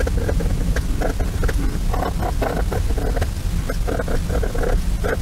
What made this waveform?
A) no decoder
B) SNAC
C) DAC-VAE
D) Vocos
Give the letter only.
A